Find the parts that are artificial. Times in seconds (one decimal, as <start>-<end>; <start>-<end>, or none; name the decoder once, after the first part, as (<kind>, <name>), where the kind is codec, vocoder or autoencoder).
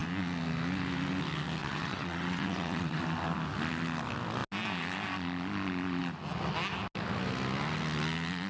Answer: 1.6-3.0 (vocoder, WaveNeXt)